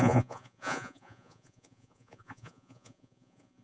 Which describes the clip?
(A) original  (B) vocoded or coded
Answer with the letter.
B